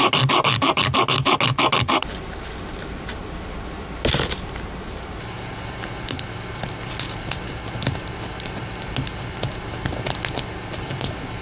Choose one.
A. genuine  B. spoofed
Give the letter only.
A